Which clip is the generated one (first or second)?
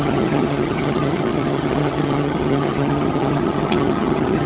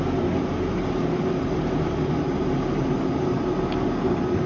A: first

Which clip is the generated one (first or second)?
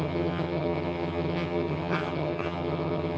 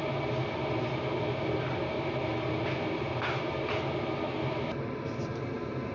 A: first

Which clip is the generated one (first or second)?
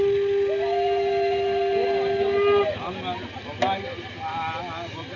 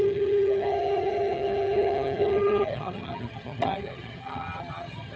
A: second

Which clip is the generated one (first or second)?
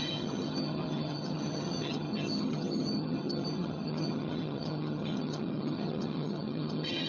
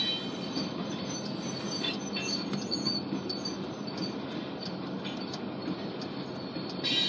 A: first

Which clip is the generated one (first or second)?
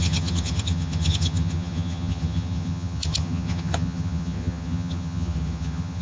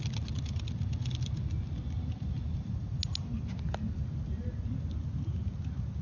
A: first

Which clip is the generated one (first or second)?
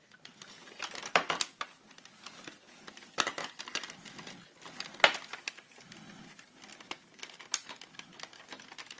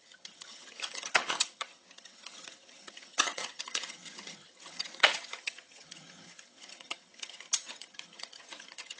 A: second